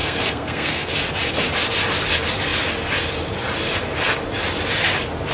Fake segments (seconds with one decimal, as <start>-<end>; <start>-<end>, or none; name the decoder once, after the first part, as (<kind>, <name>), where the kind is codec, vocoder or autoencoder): 0.0-0.9 (codec, SNAC)